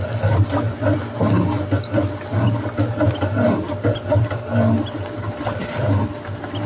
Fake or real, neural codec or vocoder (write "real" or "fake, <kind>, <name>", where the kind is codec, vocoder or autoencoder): real